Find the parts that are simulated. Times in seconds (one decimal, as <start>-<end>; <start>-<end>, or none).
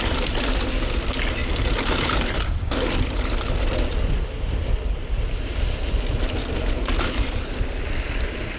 none